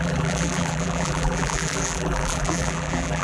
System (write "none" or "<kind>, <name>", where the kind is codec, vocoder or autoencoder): vocoder, BigVGAN v2